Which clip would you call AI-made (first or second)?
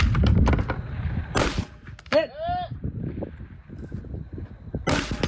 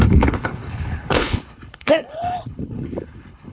second